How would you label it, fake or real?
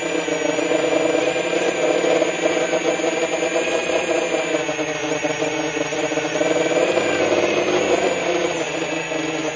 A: real